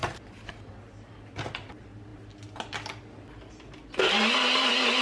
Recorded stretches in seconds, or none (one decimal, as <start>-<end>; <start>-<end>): 0.5-5.0